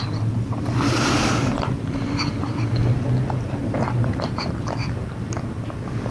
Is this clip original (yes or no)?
yes